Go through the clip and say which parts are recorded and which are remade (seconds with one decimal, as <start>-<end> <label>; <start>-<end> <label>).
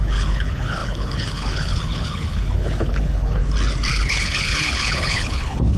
0.0-3.4 remade; 3.4-3.9 recorded; 3.9-5.8 remade